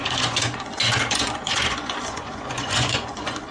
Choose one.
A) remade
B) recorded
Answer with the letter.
A